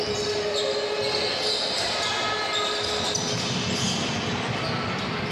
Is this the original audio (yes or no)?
yes